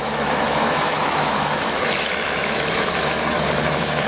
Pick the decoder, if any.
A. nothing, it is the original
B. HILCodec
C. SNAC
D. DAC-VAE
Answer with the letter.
D